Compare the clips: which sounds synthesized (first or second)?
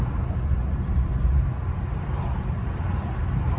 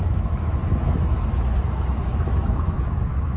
second